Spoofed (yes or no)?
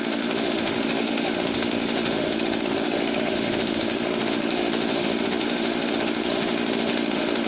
yes